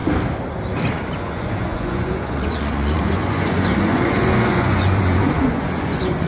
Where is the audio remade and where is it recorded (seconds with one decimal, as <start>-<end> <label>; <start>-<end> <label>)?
0.0-0.9 recorded; 0.9-6.3 remade

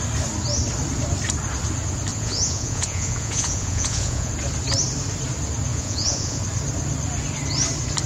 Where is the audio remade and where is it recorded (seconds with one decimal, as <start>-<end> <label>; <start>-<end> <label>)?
0.0-2.1 recorded; 2.1-4.3 remade; 4.3-5.7 recorded; 5.7-6.4 remade; 6.4-8.1 recorded

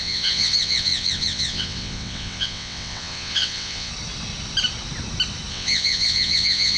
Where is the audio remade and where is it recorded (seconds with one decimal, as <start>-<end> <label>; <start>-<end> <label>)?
0.0-3.9 remade; 3.9-5.5 recorded; 5.5-6.8 remade

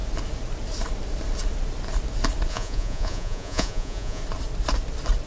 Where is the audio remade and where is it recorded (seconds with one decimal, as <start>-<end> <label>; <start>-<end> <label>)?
0.0-2.5 recorded; 2.5-4.2 remade; 4.2-5.3 recorded

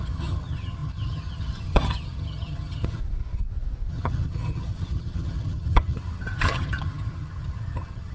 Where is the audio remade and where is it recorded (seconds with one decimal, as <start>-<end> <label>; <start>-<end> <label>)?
0.0-3.0 remade; 3.0-3.9 recorded; 3.9-8.1 remade

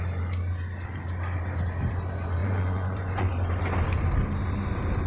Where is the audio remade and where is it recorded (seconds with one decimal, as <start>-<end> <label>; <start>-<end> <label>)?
0.0-2.4 recorded; 2.4-3.3 remade; 3.3-5.1 recorded

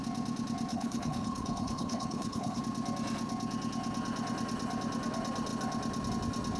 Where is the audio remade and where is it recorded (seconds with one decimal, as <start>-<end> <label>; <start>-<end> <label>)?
0.0-0.7 recorded; 0.7-2.6 remade; 2.6-6.6 recorded